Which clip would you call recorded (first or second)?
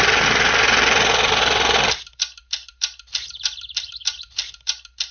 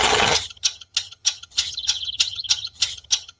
first